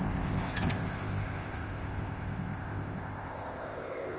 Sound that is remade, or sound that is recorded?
remade